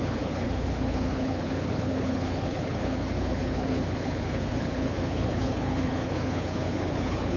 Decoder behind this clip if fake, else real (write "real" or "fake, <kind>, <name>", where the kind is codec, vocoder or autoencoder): fake, codec, HILCodec